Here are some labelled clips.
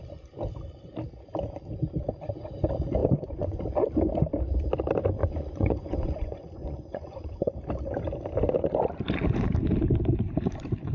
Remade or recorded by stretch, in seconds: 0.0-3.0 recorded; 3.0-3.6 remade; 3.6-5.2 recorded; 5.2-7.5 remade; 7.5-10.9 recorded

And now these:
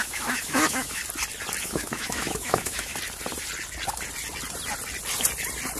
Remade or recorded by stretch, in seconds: 0.0-1.0 remade; 1.0-1.6 recorded; 1.6-2.9 remade; 2.9-5.8 recorded

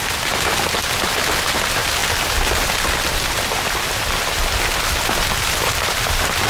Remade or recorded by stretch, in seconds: 0.0-6.5 recorded